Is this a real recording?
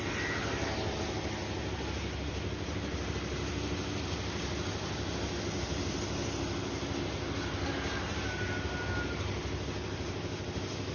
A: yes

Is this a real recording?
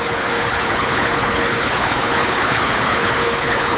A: no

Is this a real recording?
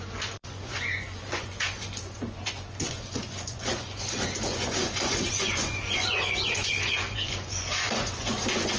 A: no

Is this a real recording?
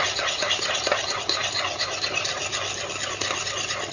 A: yes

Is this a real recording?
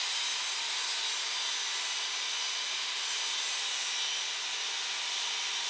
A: yes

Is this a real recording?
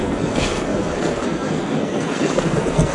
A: no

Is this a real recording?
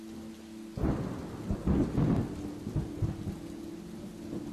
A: yes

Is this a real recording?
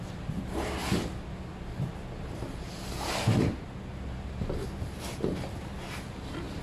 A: yes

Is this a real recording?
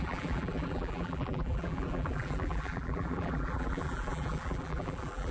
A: no